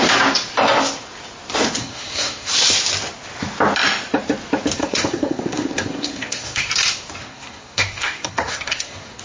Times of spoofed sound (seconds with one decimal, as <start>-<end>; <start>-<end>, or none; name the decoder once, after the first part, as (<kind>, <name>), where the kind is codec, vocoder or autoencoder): 1.8-2.5 (codec, SNAC); 4.8-6.7; 7.2-9.2